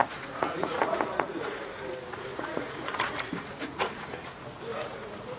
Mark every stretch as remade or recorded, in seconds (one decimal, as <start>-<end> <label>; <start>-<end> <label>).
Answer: 0.0-1.6 remade; 1.6-2.3 recorded; 2.3-4.1 remade; 4.1-4.7 recorded; 4.7-5.4 remade